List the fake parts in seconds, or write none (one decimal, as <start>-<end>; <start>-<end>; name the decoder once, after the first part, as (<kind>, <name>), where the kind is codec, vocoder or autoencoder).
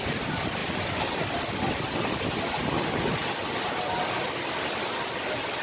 none